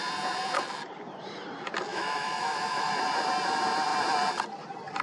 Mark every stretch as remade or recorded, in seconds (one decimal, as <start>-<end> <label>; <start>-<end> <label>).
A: 0.0-1.9 recorded; 1.9-2.9 remade; 2.9-5.0 recorded